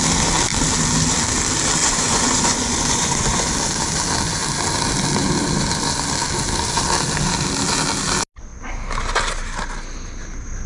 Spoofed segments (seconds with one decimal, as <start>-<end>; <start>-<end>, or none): 1.8-3.5

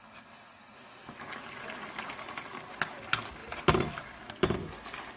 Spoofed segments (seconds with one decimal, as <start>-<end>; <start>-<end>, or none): none

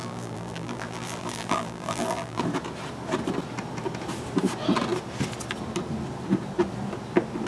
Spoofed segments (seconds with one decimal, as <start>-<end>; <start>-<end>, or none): 0.0-2.4

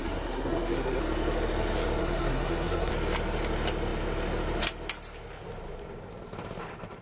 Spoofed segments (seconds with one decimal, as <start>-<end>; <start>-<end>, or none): 0.0-1.0; 2.0-2.9

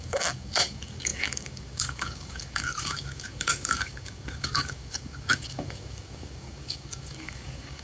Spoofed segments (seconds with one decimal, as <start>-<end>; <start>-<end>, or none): 0.0-7.8